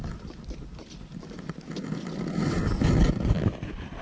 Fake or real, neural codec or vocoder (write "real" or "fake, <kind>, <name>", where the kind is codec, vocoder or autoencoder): real